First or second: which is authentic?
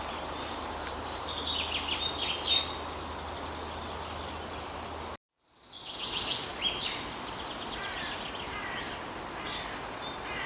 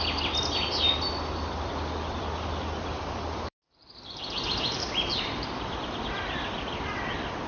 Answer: first